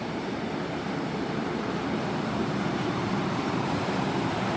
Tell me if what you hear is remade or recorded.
remade